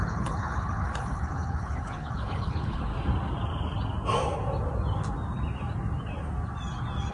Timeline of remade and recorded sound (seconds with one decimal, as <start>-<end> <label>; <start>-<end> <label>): 0.0-2.9 remade; 2.9-7.1 recorded